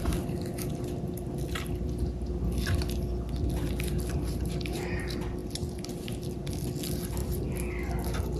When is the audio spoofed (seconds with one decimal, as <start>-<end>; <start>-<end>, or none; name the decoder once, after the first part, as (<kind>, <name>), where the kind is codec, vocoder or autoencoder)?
none